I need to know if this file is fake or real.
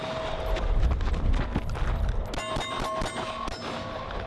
real